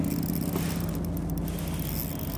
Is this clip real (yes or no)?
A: yes